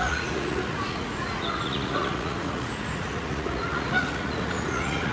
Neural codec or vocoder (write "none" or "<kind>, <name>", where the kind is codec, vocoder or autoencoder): vocoder, Vocos